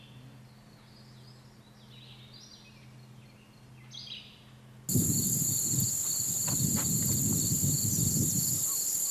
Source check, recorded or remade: recorded